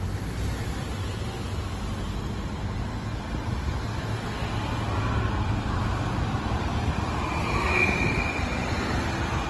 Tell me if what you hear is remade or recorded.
recorded